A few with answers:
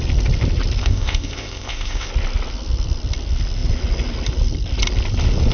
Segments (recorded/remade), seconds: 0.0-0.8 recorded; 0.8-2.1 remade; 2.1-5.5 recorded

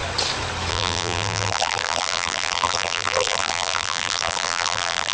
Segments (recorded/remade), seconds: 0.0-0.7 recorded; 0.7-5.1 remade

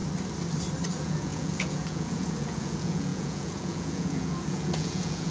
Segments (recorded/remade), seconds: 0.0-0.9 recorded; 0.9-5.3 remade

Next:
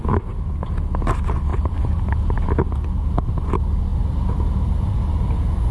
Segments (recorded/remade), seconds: 0.0-1.5 recorded; 1.5-2.1 remade; 2.1-5.7 recorded

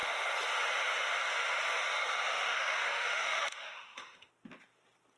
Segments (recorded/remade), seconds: 0.0-2.3 recorded; 2.3-4.3 remade; 4.3-5.2 recorded

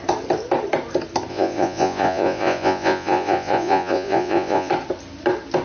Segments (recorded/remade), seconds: 0.0-1.3 recorded; 1.3-4.7 remade; 4.7-5.6 recorded

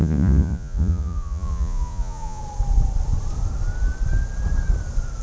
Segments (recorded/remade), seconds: 0.0-2.4 remade; 2.4-5.2 recorded

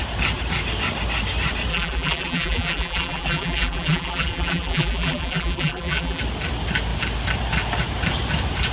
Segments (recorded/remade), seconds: 0.0-1.7 recorded; 1.7-6.2 remade; 6.2-8.7 recorded